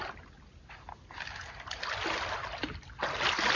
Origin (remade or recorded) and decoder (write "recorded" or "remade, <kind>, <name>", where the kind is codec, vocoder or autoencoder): recorded